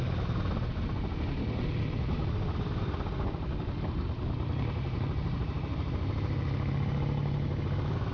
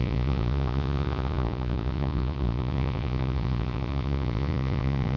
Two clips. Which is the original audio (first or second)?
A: first